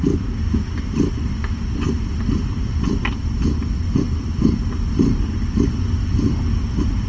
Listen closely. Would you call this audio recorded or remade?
recorded